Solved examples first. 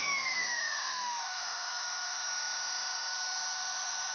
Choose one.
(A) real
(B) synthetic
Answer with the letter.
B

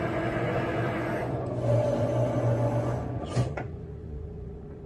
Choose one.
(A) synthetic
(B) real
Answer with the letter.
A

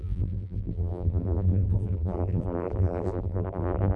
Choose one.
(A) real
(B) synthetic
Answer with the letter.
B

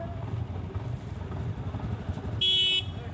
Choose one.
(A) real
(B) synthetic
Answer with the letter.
A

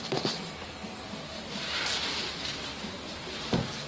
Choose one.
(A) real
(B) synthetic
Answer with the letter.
A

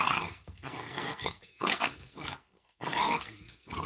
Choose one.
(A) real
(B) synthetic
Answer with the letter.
B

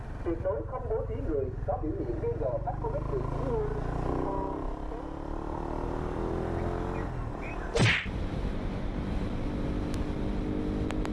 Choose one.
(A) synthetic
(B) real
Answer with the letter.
B